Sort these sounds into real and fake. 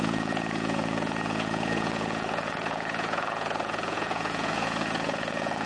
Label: fake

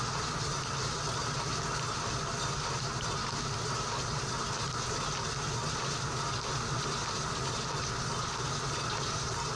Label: real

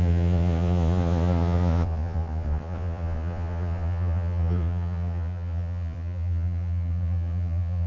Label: fake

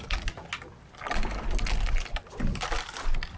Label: real